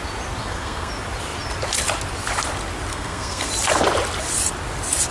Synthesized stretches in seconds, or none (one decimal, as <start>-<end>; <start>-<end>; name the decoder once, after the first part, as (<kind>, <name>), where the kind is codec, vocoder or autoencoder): 0.4-0.9 (codec, SNAC); 2.9-3.5

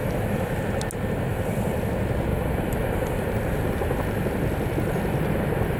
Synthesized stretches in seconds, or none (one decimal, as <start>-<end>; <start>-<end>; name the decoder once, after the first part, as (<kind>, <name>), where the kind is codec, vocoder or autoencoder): 0.0-0.6 (vocoder, BigVGAN v2); 1.3-1.9; 2.3-5.8

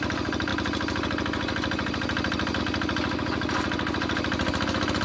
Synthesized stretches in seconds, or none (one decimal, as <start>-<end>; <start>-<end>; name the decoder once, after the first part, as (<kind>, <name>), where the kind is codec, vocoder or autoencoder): none

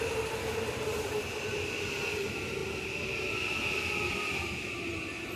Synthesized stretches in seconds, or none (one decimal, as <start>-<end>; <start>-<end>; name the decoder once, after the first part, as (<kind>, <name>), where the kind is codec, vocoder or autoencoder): none

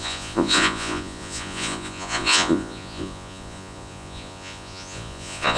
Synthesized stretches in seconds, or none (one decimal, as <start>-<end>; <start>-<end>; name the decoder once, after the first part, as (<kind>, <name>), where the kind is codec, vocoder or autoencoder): 0.0-5.6 (vocoder, Vocos)

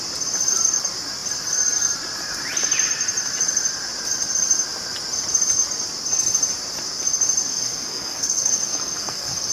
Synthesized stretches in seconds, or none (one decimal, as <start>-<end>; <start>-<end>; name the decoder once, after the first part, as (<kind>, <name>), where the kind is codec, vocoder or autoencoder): 7.5-9.5 (codec, SNAC)

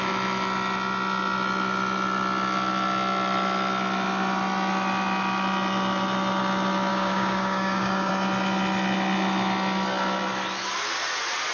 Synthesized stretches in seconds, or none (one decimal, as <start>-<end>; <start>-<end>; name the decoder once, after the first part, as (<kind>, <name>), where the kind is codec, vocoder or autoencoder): 6.9-8.1 (codec, DAC)